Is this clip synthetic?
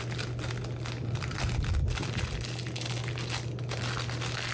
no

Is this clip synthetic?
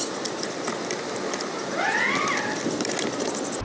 no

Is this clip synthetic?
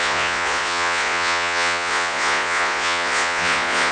yes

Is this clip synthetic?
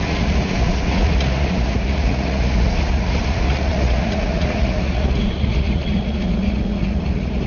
yes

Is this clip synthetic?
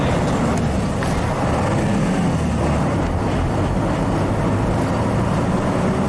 no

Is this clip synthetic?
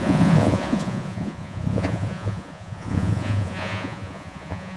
yes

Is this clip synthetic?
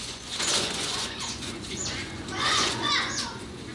yes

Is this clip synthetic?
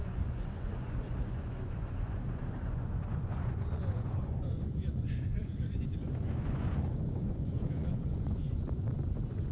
yes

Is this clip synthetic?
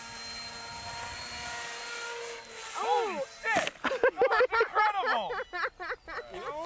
no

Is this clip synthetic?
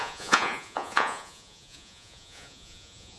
yes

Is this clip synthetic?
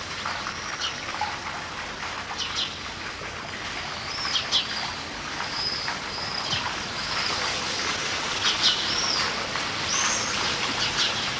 no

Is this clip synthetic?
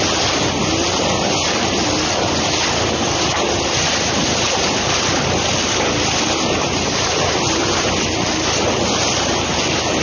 no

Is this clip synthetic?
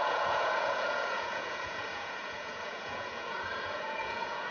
yes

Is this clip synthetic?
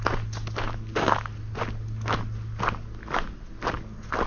no